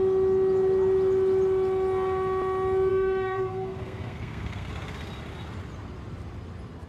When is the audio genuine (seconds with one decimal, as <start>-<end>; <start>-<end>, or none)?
0.0-2.9; 4.7-6.9